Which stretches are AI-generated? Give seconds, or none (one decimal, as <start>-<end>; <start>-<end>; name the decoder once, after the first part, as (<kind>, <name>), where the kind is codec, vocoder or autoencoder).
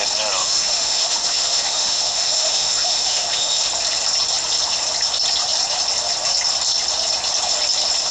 0.4-3.7 (autoencoder, DAC-VAE)